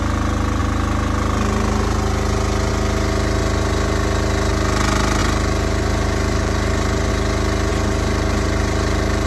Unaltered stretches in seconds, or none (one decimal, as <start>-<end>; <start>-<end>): 0.0-5.2; 7.1-7.7